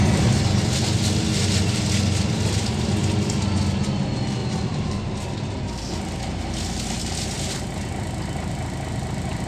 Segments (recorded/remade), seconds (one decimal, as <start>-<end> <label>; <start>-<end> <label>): 0.0-4.4 recorded; 4.4-5.1 remade; 5.1-9.5 recorded